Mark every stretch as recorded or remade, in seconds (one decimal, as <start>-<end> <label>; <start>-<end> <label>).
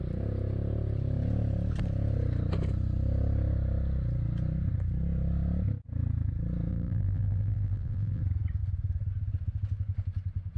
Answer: 0.0-6.7 recorded; 6.7-8.2 remade; 8.2-10.6 recorded